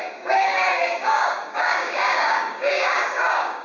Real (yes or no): no